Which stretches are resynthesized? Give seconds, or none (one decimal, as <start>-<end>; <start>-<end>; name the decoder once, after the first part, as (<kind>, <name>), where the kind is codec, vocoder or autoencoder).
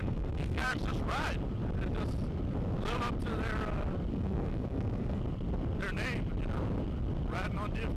0.0-0.8 (codec, SNAC); 4.1-5.2